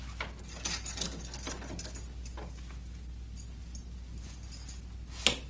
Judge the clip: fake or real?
real